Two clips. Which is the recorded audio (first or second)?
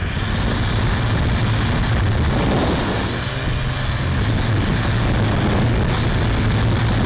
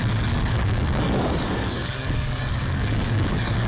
first